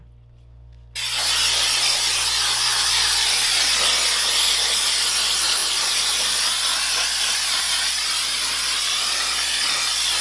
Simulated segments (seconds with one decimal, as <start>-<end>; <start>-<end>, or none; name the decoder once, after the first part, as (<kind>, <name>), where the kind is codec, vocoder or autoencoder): none